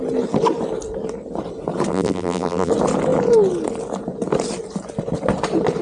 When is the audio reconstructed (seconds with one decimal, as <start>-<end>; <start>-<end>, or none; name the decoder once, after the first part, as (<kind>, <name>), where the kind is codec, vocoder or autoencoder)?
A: 1.9-2.7 (vocoder, BigVGAN v2)